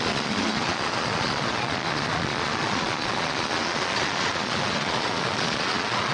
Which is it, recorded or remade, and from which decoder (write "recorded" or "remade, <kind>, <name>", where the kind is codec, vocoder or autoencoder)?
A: remade, vocoder, Vocos